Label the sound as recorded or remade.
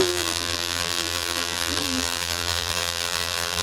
remade